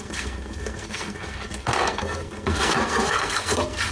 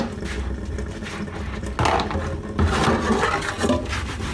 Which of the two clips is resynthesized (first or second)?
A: first